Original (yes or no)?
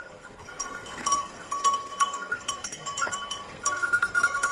no